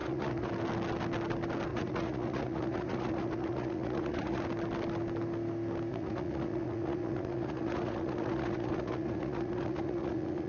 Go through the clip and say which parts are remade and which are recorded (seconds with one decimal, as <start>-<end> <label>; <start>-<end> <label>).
0.0-0.5 remade; 0.5-1.7 recorded; 1.7-4.4 remade; 4.4-5.9 recorded; 5.9-10.5 remade